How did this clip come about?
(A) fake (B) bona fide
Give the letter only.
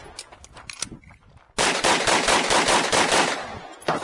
B